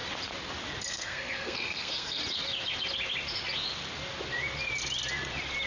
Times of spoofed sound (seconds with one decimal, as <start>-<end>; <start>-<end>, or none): 0.9-2.2